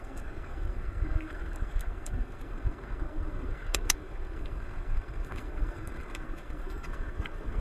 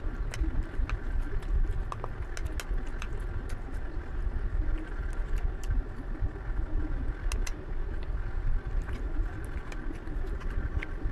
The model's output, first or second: first